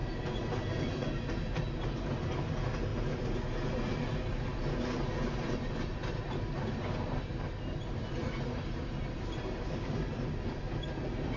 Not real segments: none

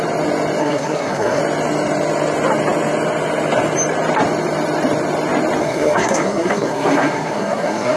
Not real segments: 0.6-1.4 (codec, SNAC); 5.6-8.0

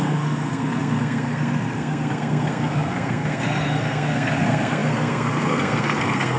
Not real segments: 0.0-6.4 (codec, SNAC)

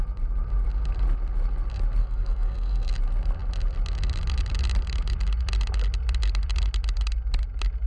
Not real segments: 2.0-2.9 (codec, SNAC)